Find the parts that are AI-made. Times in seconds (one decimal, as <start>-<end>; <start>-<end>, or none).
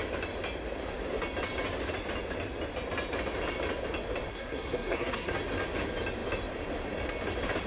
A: 4.3-5.4